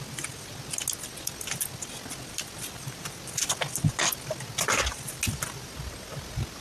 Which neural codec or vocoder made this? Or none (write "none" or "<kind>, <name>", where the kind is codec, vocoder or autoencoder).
none